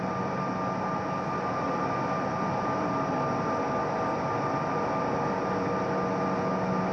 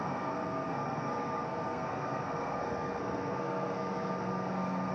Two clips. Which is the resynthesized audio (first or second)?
second